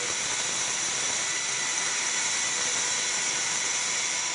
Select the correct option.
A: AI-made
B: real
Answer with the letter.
B